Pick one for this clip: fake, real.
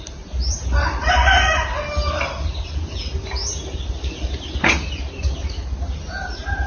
real